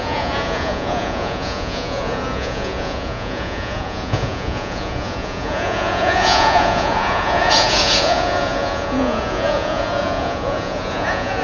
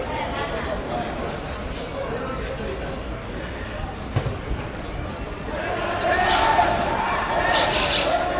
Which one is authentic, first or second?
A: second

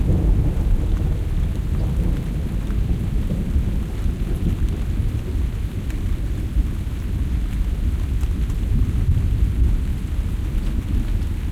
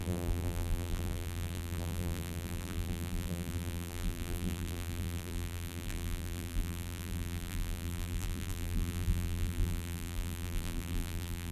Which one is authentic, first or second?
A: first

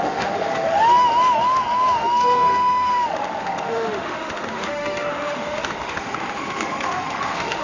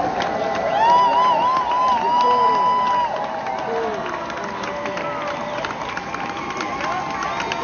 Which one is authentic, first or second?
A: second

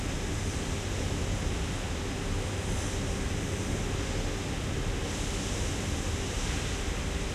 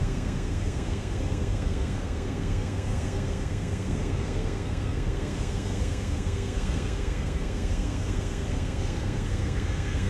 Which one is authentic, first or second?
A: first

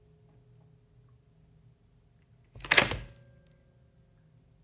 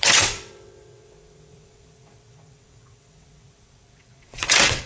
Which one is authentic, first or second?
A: first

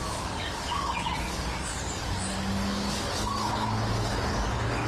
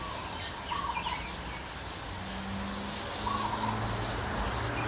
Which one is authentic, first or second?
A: second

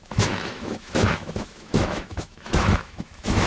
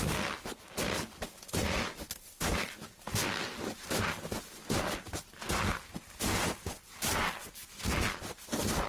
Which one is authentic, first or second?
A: second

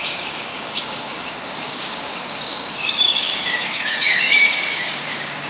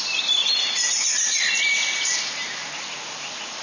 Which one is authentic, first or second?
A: second